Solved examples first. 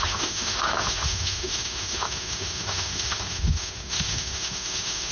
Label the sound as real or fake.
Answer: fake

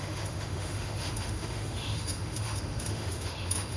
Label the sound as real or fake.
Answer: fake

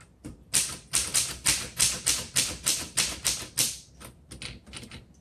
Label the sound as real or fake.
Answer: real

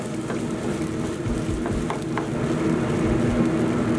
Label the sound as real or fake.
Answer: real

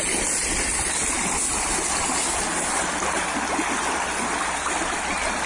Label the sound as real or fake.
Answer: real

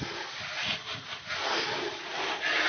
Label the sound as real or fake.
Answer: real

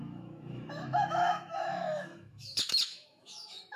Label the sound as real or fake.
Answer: fake